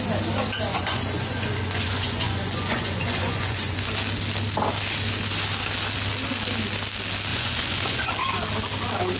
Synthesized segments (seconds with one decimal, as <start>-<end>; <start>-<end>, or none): 0.7-3.9; 7.3-8.1